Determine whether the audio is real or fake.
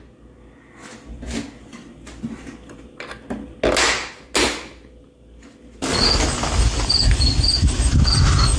real